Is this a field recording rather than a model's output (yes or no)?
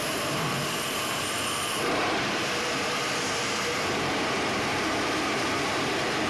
no